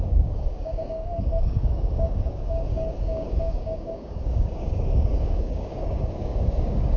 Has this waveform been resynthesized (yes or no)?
yes